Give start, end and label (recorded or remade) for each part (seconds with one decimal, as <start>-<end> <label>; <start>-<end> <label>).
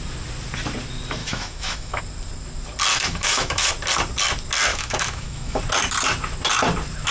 0.0-1.2 recorded; 1.2-2.0 remade; 2.0-2.9 recorded; 2.9-3.7 remade; 3.7-4.7 recorded; 4.7-5.6 remade; 5.6-7.1 recorded